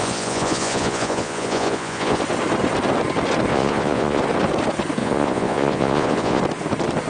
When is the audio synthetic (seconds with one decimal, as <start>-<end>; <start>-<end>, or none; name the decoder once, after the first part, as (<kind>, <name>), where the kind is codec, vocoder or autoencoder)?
0.0-2.2 (vocoder, Vocos); 3.5-4.2; 5.0-6.4